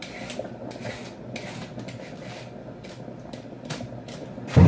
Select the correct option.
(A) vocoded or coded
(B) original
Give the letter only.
B